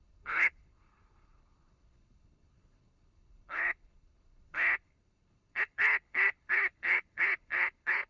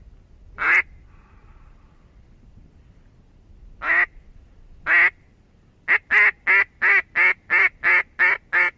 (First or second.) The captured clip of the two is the second